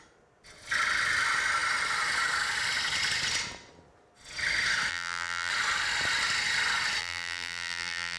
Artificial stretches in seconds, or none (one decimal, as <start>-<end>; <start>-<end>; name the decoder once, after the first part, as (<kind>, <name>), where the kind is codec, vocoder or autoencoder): 4.9-5.5 (vocoder, BigVGAN v2); 7.0-8.2

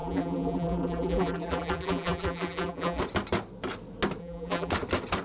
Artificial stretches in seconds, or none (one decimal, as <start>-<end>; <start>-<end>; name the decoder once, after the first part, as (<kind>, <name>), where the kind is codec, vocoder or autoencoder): 0.0-3.0 (vocoder, BigVGAN v2); 4.2-4.7